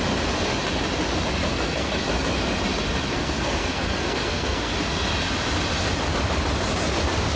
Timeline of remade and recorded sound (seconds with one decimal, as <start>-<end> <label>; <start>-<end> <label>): 0.0-1.5 recorded; 1.5-2.0 remade; 2.0-3.1 recorded; 3.1-4.7 remade; 4.7-7.4 recorded